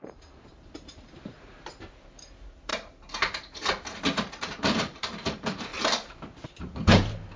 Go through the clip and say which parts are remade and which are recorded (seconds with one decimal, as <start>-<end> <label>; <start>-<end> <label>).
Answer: 0.0-2.7 remade; 2.7-4.4 recorded; 4.4-5.7 remade; 5.7-6.6 recorded; 6.6-7.4 remade